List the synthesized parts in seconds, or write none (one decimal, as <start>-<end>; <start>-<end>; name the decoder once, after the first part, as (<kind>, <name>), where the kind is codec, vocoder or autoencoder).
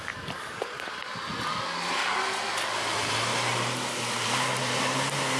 0.0-1.0 (vocoder, BigVGAN v2); 1.6-2.0; 4.6-5.4